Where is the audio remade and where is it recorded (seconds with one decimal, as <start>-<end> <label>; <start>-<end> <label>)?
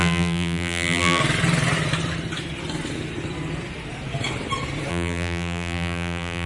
0.0-1.2 remade; 1.2-4.9 recorded; 4.9-6.5 remade